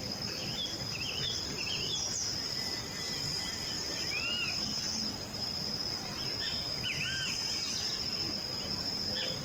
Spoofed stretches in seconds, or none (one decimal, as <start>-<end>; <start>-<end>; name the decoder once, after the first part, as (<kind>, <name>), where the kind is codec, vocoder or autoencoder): 6.5-7.0 (autoencoder, DAC-VAE)